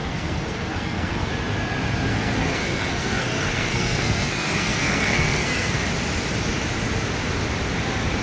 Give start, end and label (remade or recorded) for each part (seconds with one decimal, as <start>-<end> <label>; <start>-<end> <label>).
0.0-1.3 remade; 1.3-2.1 recorded; 2.1-5.9 remade; 5.9-8.2 recorded